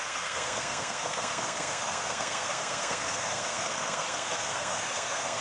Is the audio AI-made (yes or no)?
yes